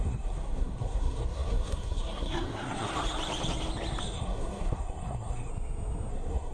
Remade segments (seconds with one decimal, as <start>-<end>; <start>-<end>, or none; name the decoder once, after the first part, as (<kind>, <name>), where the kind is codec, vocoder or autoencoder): 0.0-2.9 (codec, SNAC); 4.0-5.5; 6.1-6.5